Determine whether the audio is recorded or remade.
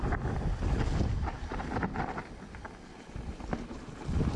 recorded